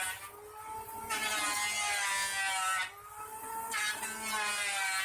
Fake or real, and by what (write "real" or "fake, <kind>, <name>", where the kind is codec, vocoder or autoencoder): real